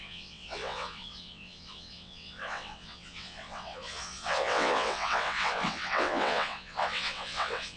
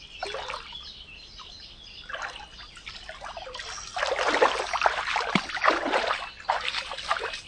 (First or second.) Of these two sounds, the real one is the second